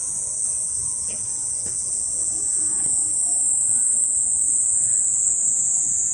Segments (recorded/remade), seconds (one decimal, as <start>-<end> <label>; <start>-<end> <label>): 0.0-3.0 remade; 3.0-3.6 recorded; 3.6-6.1 remade